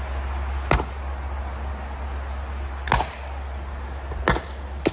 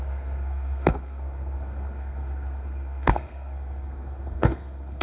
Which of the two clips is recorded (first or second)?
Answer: first